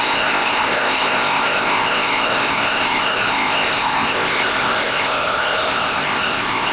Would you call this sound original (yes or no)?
no